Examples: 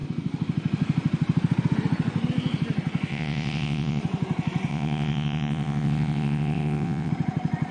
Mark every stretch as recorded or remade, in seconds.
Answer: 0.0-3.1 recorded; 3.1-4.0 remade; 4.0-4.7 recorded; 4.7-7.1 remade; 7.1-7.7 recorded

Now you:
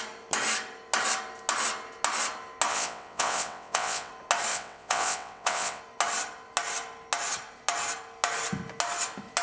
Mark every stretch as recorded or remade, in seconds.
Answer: 0.0-2.7 recorded; 2.7-4.1 remade; 4.1-4.5 recorded; 4.5-5.8 remade; 5.8-9.4 recorded